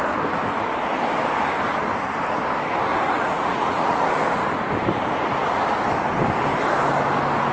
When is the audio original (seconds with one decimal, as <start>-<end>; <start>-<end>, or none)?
0.0-2.9; 4.0-7.5